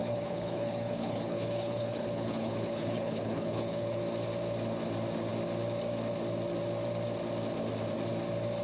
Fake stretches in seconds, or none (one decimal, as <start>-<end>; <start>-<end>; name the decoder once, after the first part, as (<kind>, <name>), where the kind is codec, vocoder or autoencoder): 0.0-4.0 (codec, HILCodec)